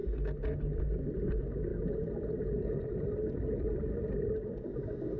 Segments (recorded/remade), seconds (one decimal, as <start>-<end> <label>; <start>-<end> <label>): 0.0-5.2 recorded